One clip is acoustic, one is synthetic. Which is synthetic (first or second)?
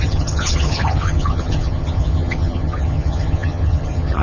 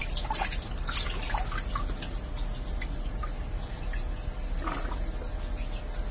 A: first